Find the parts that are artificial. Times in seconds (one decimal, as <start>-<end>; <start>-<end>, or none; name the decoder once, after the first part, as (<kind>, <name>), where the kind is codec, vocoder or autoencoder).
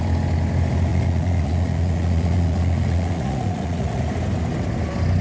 0.9-4.0 (vocoder, Vocos)